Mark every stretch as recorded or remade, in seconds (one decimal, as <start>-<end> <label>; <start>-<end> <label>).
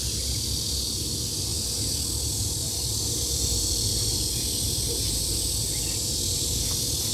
0.0-7.1 recorded